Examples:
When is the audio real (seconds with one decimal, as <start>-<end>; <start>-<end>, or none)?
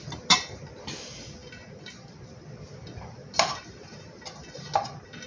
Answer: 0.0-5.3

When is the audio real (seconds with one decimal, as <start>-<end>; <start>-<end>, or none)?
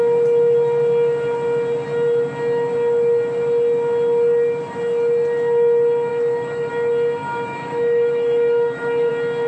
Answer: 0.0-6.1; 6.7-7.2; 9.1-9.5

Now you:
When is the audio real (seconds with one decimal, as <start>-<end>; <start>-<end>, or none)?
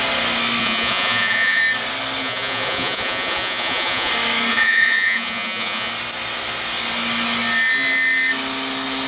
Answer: 0.0-0.6; 1.6-2.2; 4.1-4.5; 5.9-9.1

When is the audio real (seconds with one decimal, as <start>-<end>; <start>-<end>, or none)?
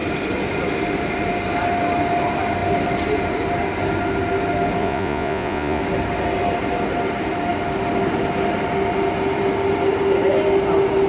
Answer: 0.0-4.8; 5.8-11.1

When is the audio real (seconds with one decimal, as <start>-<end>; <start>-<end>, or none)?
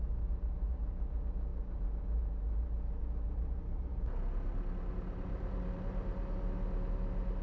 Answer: 3.9-4.9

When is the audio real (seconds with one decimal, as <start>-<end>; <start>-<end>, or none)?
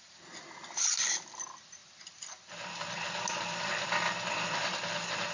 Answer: 0.0-5.3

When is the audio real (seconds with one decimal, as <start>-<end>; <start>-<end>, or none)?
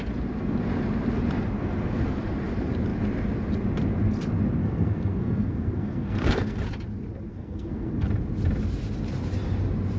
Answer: 0.0-4.6; 6.6-7.3; 7.9-10.0